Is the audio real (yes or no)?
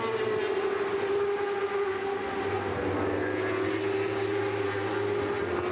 yes